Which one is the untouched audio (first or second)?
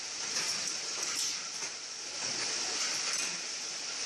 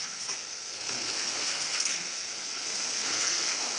first